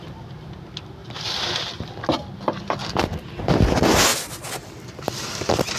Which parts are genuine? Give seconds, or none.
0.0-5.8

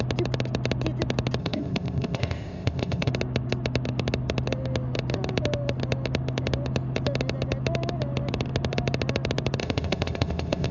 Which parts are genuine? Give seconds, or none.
0.0-1.4; 3.1-9.6

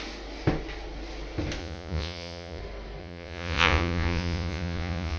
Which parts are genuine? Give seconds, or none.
0.0-1.6; 2.6-3.0

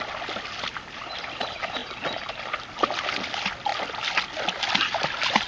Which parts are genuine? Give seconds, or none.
0.0-5.5

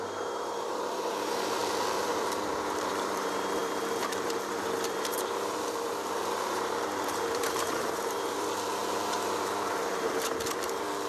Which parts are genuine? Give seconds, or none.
none

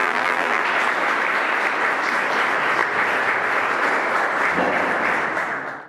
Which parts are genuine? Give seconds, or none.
0.6-5.9